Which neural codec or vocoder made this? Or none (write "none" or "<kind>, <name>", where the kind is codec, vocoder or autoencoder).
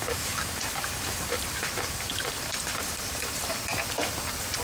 vocoder, BigVGAN v2